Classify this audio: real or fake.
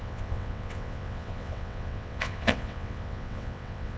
fake